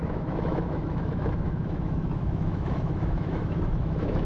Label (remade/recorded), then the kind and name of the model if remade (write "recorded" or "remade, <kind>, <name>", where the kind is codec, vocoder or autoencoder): remade, autoencoder, DAC-VAE